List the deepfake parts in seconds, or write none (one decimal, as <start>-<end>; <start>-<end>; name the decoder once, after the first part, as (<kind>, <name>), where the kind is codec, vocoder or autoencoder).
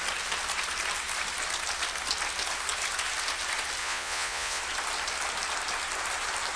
3.8-4.6 (vocoder, Vocos)